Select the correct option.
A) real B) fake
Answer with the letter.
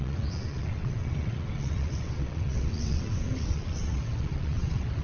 B